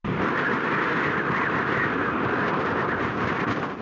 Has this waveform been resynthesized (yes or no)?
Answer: no